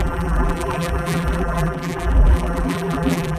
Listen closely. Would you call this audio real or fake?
fake